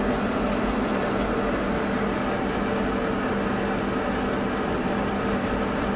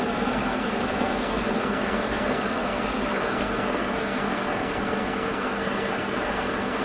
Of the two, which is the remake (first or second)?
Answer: second